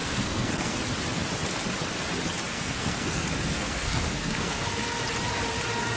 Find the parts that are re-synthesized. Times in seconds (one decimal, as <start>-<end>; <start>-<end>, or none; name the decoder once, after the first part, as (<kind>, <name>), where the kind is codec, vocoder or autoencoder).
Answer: 0.0-0.8 (codec, SNAC); 2.5-5.0